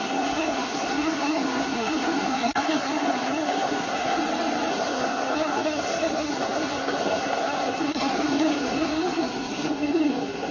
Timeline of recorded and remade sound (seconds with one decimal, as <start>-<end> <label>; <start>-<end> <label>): 0.0-4.2 remade; 4.2-4.7 recorded; 4.7-10.5 remade